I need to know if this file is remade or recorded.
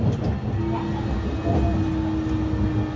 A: recorded